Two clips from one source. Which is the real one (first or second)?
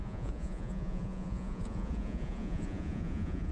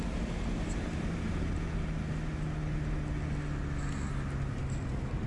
second